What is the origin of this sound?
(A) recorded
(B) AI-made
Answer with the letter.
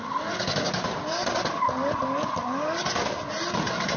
A